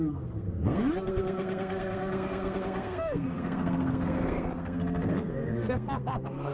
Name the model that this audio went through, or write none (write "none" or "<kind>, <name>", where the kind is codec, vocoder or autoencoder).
codec, SNAC